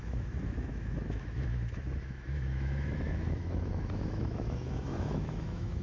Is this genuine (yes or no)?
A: no